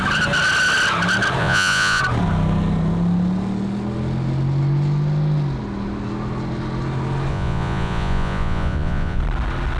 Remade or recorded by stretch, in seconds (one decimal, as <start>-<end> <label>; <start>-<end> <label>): 0.0-1.4 recorded; 1.4-2.0 remade; 2.0-7.3 recorded; 7.3-9.2 remade; 9.2-9.8 recorded